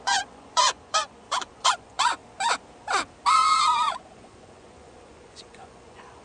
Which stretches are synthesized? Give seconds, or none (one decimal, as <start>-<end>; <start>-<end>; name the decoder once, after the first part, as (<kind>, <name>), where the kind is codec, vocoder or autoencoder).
0.0-2.2 (vocoder, Vocos); 3.3-6.2